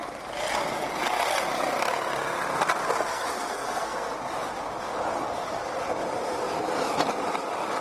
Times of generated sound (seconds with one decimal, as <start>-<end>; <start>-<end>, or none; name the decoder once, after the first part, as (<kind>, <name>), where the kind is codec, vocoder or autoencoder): 3.1-4.1 (codec, SNAC)